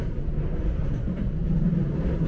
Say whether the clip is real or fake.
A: real